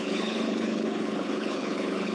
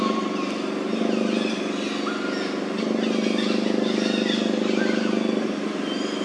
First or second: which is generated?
first